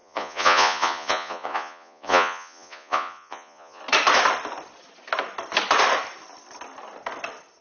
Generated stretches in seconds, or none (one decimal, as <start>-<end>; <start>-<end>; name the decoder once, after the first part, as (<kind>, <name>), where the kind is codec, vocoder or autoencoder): 0.0-3.8 (vocoder, Vocos)